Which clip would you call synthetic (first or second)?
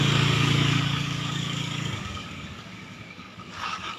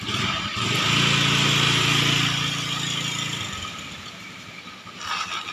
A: first